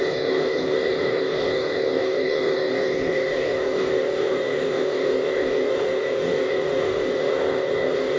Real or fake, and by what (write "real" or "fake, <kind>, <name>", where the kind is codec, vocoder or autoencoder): fake, codec, DAC